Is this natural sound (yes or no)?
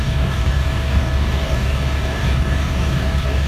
no